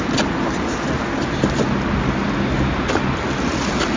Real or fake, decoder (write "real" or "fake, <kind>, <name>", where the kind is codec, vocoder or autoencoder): real